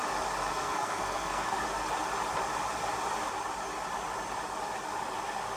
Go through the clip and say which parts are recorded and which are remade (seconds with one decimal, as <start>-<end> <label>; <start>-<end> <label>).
0.0-0.5 recorded; 0.5-1.6 remade; 1.6-5.6 recorded